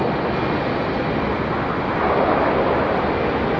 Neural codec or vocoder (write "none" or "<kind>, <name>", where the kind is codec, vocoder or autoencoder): none